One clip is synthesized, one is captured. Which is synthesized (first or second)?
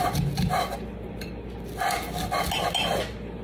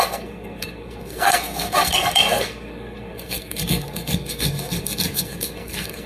second